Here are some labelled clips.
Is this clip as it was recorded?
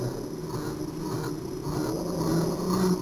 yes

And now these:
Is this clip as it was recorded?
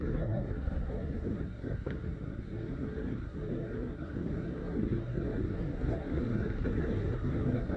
no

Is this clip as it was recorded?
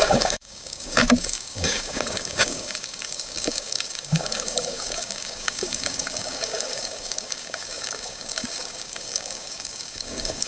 no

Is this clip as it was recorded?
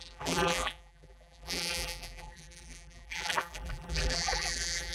no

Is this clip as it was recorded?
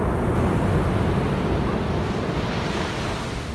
yes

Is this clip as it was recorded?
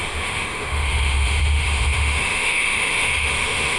no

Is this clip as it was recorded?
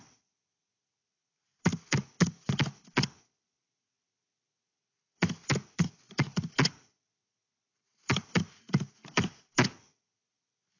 yes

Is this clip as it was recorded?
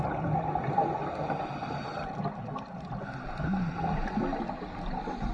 yes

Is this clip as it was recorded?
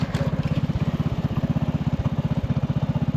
yes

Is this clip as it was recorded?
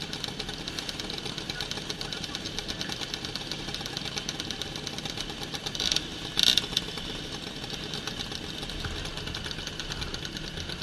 yes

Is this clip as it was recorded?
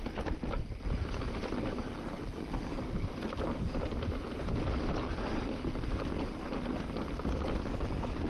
yes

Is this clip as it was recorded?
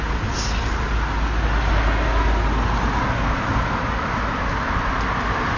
yes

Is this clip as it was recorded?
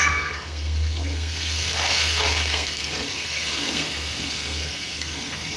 no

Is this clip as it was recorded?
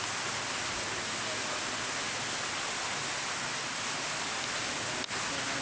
yes